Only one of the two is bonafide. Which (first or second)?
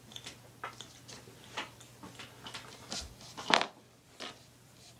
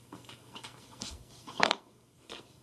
first